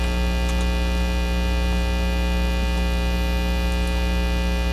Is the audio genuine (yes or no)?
yes